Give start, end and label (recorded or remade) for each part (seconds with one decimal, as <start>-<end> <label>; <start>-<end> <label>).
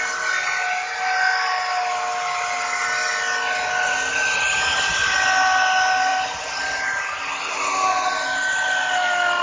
0.0-6.1 recorded; 6.1-6.8 remade; 6.8-9.4 recorded